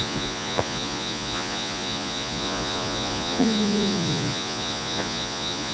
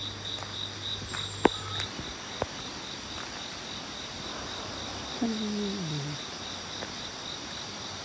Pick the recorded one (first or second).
second